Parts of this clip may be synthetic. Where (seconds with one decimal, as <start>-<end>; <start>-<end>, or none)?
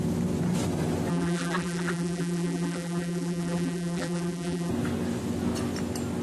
1.1-4.7